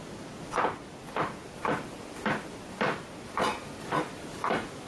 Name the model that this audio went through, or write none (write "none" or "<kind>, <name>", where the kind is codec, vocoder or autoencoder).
none